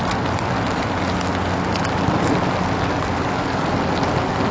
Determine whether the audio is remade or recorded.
recorded